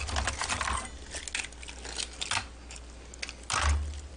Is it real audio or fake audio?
real